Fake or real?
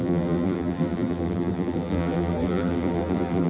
fake